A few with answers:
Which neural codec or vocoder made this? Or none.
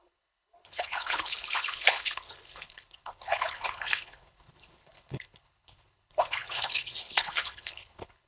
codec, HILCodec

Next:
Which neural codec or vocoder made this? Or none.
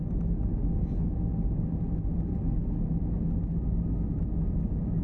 none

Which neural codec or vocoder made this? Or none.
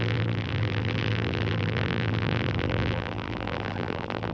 vocoder, BigVGAN v2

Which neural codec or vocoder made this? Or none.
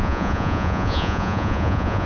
vocoder, Vocos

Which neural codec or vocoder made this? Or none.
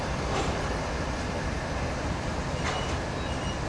none